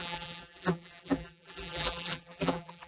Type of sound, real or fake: fake